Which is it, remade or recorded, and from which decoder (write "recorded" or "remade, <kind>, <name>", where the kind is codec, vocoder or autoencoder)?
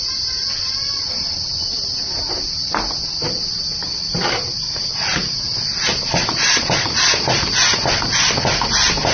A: recorded